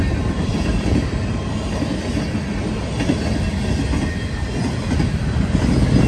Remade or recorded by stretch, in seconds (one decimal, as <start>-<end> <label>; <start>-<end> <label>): 0.0-6.1 recorded